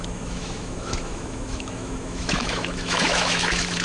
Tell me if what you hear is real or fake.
fake